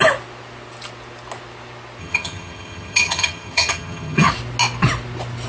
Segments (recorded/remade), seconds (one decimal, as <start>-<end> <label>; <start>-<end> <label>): 0.0-2.0 recorded; 2.0-4.3 remade; 4.3-5.5 recorded